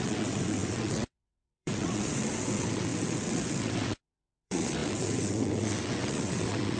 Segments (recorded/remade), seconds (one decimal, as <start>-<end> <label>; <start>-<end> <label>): 0.0-6.8 remade